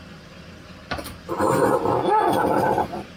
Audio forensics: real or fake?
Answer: real